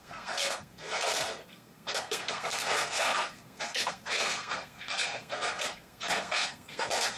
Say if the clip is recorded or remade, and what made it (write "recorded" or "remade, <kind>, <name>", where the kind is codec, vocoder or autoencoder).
remade, codec, SNAC